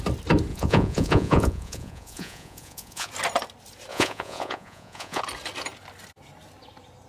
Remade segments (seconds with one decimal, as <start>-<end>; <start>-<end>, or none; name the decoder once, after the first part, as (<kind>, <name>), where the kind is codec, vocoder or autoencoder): 0.5-3.1 (vocoder, Vocos); 3.9-5.2

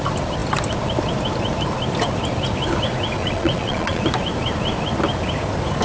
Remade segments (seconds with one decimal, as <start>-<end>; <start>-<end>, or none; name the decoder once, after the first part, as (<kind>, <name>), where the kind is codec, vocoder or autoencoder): 3.2-4.0 (vocoder, Vocos)

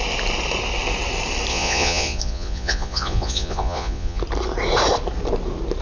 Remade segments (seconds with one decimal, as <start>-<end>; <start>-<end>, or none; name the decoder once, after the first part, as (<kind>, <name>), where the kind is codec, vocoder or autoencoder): 1.5-4.2 (vocoder, Vocos)

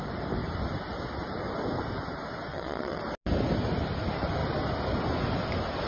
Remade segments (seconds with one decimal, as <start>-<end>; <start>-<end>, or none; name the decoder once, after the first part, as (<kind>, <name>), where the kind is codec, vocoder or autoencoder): 2.5-3.0 (vocoder, WaveNeXt)

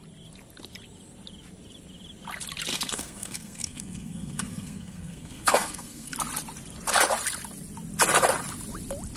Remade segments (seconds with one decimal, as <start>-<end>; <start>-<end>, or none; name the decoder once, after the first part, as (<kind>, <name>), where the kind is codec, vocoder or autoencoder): 2.7-6.1 (codec, SNAC)

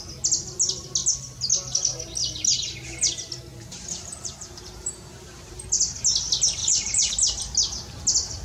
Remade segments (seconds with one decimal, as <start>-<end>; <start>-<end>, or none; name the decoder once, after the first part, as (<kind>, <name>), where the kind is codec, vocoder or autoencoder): 3.5-5.5 (vocoder, BigVGAN v2); 6.6-7.1

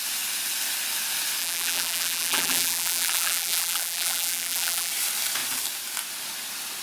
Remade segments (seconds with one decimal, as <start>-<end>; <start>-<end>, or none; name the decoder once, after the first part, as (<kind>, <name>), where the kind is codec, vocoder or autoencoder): 1.4-4.9 (vocoder, BigVGAN v2)